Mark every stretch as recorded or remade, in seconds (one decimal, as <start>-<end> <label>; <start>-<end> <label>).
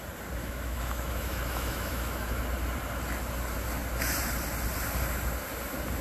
0.0-0.4 recorded; 0.4-2.4 remade; 2.4-6.0 recorded